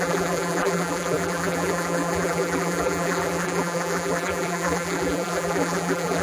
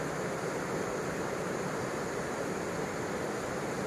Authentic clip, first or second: second